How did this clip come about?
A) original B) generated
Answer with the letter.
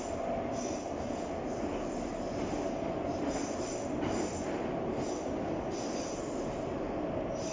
A